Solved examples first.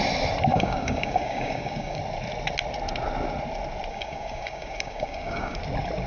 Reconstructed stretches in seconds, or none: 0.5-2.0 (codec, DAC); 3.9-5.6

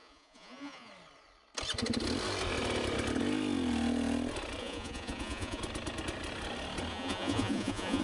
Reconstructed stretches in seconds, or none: 0.0-0.9 (vocoder, Vocos); 4.6-5.6; 6.9-8.0

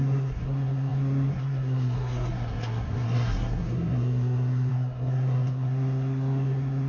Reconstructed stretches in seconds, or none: 0.0-6.9 (codec, SNAC)

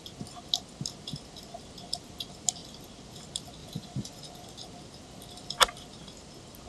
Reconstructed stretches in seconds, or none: 3.6-4.3 (vocoder, Vocos)